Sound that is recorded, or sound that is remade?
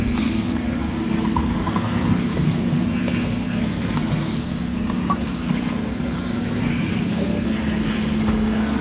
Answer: remade